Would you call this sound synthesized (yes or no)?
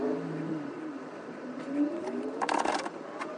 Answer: yes